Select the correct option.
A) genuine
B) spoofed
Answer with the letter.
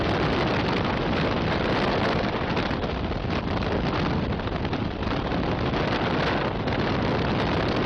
A